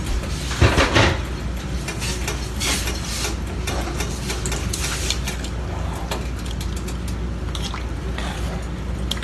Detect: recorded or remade recorded